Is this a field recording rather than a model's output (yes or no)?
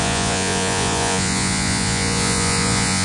no